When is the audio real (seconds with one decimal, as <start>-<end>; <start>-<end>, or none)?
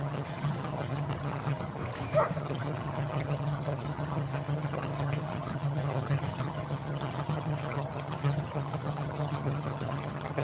1.8-2.4